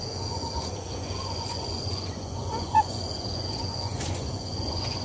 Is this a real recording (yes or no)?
no